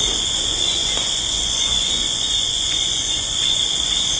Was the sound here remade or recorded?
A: remade